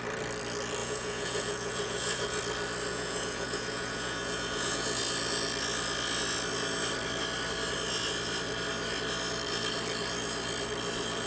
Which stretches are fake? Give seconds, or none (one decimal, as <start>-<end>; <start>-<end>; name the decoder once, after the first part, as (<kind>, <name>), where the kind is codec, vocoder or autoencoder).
0.8-2.4 (vocoder, Vocos); 2.9-5.0